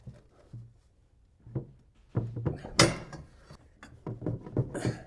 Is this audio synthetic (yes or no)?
no